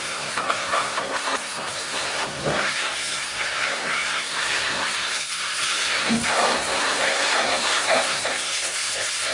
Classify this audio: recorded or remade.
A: remade